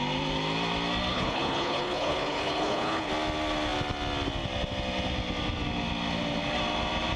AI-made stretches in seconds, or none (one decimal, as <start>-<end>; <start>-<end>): 1.1-3.1